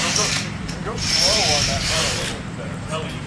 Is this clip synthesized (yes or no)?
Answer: yes